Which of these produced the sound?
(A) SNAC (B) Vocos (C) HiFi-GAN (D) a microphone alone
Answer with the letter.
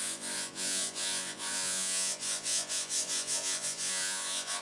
B